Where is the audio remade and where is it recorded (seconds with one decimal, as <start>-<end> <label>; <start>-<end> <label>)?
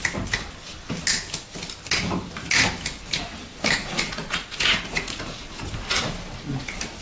0.0-3.8 recorded; 3.8-5.7 remade; 5.7-7.0 recorded